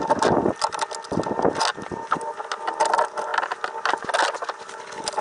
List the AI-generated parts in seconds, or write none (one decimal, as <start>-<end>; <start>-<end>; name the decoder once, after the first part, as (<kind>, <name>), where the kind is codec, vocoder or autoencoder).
1.7-2.4 (vocoder, BigVGAN v2)